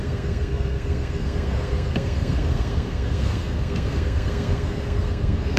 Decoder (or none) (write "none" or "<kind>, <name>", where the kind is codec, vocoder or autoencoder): codec, SNAC